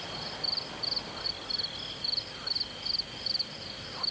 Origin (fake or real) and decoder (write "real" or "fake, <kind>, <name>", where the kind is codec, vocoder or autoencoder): real